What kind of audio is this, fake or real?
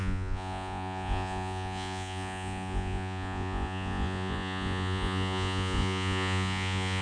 fake